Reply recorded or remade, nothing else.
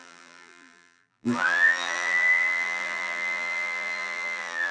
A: remade